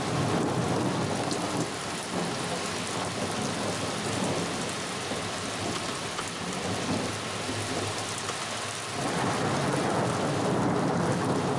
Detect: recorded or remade recorded